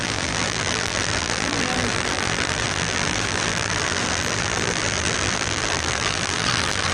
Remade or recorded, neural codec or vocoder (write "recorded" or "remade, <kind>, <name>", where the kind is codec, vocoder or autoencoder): remade, vocoder, BigVGAN v2